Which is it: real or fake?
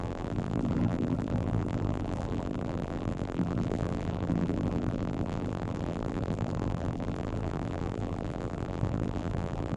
fake